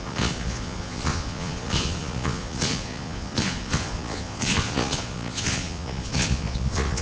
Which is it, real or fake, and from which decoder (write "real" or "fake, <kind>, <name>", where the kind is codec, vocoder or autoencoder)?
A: fake, vocoder, Vocos